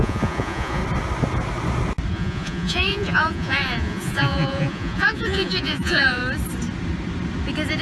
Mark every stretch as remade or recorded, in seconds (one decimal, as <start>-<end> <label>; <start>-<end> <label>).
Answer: 0.0-0.8 remade; 0.8-2.1 recorded; 2.1-6.2 remade; 6.2-7.8 recorded